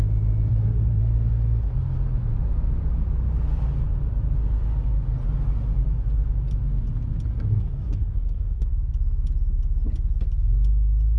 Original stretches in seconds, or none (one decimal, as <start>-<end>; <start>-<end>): 0.0-0.5; 1.0-7.3; 8.7-11.2